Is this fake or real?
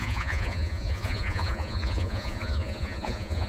fake